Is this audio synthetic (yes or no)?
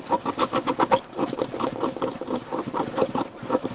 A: yes